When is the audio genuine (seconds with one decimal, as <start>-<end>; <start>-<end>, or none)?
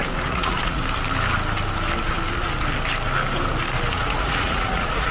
0.8-3.9